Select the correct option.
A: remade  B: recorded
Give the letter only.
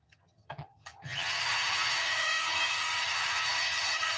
A